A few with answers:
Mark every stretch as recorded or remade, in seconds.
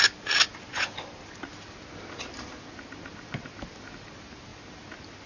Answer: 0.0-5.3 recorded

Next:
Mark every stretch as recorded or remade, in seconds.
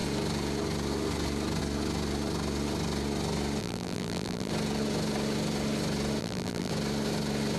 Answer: 0.0-3.6 recorded; 3.6-4.5 remade; 4.5-6.2 recorded; 6.2-6.7 remade; 6.7-7.6 recorded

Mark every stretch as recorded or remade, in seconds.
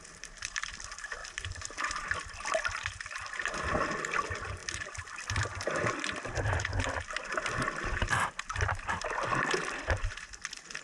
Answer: 0.0-1.2 recorded; 1.2-2.2 remade; 2.2-10.8 recorded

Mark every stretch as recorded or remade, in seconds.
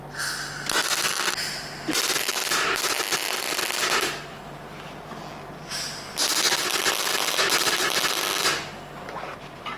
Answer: 0.0-9.8 recorded